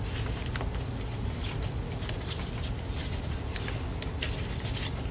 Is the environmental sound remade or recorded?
recorded